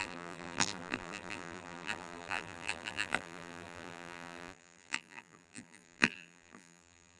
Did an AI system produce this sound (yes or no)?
yes